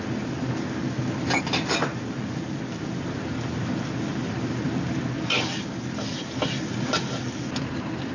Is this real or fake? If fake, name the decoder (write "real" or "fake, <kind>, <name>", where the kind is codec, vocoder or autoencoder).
real